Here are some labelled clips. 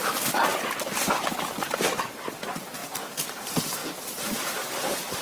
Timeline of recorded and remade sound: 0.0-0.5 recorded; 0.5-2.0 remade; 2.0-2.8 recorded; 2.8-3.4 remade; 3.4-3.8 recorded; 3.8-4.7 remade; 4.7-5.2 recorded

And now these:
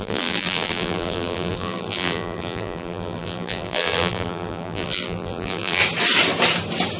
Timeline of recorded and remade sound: 0.0-5.8 remade; 5.8-7.0 recorded

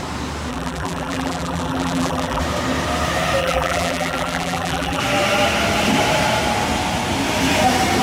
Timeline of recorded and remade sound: 0.0-0.5 recorded; 0.5-2.4 remade; 2.4-3.4 recorded; 3.4-5.0 remade; 5.0-8.0 recorded

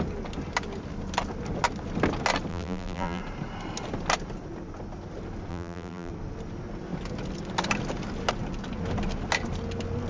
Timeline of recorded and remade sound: 0.0-2.5 recorded; 2.5-3.2 remade; 3.2-5.5 recorded; 5.5-6.1 remade; 6.1-10.1 recorded

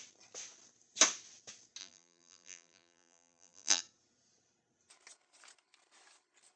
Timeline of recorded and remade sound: 0.0-1.8 recorded; 1.8-3.8 remade; 3.8-6.6 recorded

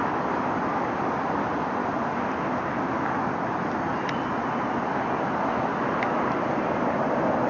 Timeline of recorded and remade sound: 0.0-1.8 remade; 1.8-3.2 recorded; 3.2-7.5 remade

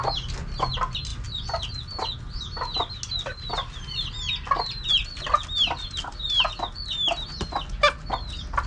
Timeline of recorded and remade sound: 0.0-8.7 recorded